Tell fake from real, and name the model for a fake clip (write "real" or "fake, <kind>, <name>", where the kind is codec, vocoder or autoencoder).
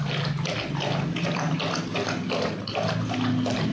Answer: real